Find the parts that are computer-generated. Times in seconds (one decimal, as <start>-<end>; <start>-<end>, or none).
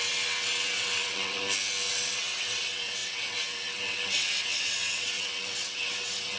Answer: 0.0-1.4; 1.9-6.4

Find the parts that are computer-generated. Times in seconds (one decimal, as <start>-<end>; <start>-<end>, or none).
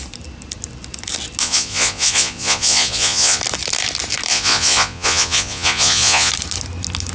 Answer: 1.4-3.4; 4.3-6.3